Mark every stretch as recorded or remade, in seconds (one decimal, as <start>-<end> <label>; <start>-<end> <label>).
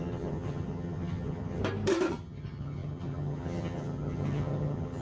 0.0-1.6 remade; 1.6-2.1 recorded; 2.1-5.0 remade